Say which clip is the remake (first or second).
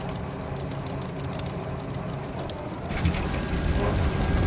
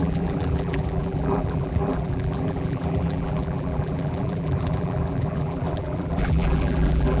second